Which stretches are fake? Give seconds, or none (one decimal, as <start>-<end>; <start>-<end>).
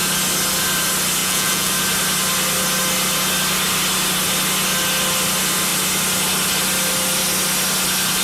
1.2-1.7